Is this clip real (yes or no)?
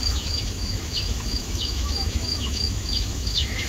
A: no